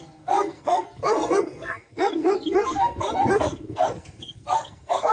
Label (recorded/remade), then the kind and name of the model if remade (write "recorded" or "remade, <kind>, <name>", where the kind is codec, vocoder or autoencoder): remade, codec, SNAC